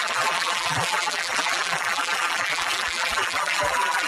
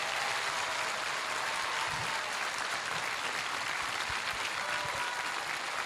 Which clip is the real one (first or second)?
second